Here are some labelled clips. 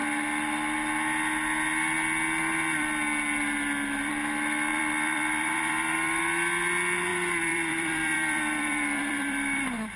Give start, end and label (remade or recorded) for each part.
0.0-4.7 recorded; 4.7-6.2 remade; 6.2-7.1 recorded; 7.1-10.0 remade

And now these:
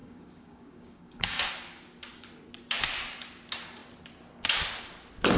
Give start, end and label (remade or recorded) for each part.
0.0-1.5 remade; 1.5-5.4 recorded

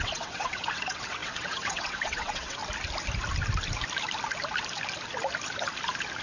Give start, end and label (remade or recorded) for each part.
0.0-2.6 remade; 2.6-6.2 recorded

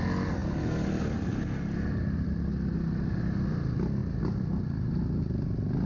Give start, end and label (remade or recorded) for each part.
0.0-5.9 recorded

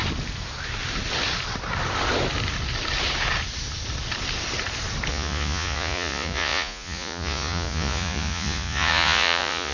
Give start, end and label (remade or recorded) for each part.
0.0-5.1 recorded; 5.1-9.7 remade

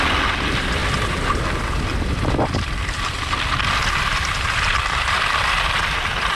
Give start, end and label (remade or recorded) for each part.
0.0-6.3 recorded

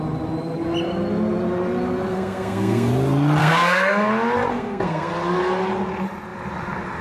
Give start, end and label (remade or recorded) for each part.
0.0-2.1 recorded; 2.1-2.9 remade; 2.9-3.4 recorded; 3.4-4.1 remade; 4.1-4.5 recorded; 4.5-5.1 remade; 5.1-7.0 recorded

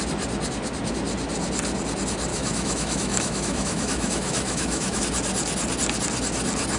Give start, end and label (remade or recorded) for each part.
0.0-2.3 recorded; 2.3-5.0 remade; 5.0-6.8 recorded